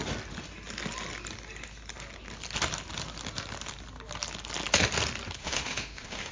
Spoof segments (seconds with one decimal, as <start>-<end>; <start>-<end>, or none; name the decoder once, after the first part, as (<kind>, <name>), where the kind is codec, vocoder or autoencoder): 5.4-6.3 (autoencoder, DAC-VAE)